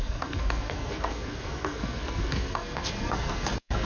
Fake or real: fake